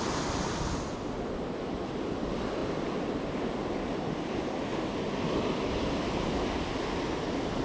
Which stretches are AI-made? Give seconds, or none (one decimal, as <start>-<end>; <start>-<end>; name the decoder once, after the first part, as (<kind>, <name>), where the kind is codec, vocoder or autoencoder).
none